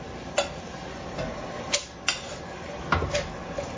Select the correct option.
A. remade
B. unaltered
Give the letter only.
B